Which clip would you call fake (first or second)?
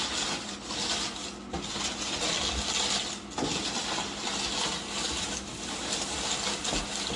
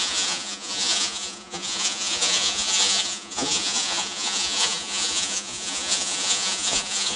second